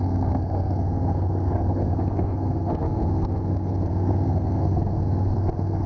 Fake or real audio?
fake